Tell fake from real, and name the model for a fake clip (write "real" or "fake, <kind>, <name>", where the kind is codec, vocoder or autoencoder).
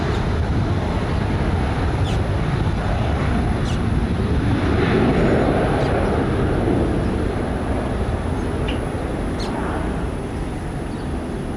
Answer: real